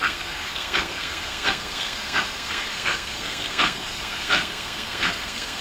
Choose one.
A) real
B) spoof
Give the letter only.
B